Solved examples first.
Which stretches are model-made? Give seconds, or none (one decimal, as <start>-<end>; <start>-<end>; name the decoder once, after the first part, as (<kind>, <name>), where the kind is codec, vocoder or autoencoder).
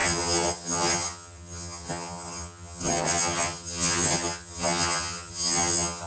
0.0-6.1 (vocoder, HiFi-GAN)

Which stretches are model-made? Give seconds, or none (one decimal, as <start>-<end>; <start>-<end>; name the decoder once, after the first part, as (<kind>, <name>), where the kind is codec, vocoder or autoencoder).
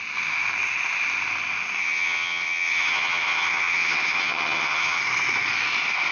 1.8-5.0 (vocoder, HiFi-GAN)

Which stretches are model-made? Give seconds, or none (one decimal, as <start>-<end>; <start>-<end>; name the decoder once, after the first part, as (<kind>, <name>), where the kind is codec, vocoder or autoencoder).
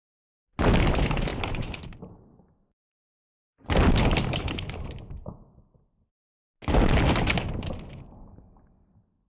none